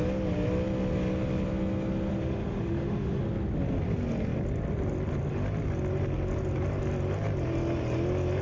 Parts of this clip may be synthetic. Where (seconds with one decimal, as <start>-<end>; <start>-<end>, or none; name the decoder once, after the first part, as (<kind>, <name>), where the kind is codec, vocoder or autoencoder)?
2.1-3.2 (autoencoder, DAC-VAE)